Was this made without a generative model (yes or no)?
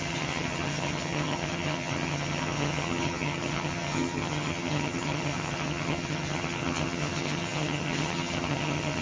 no